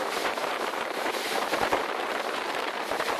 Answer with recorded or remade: remade